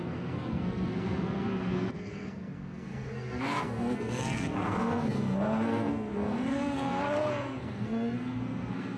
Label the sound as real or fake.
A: fake